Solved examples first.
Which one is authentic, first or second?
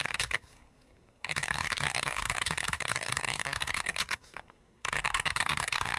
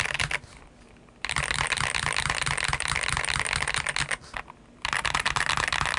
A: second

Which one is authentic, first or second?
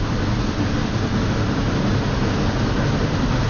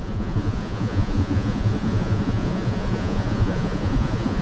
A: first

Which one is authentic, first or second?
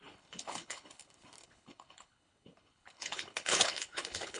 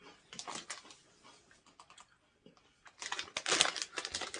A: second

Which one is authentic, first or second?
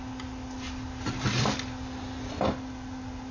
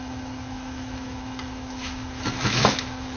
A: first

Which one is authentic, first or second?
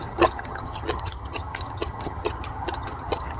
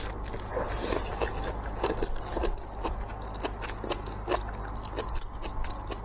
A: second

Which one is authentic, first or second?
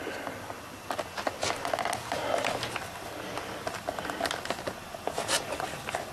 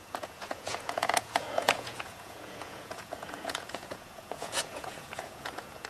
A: first